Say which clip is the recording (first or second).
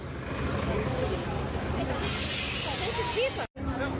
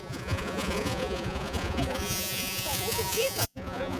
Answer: first